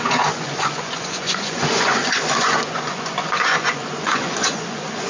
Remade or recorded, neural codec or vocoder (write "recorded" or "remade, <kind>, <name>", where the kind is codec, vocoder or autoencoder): remade, vocoder, Vocos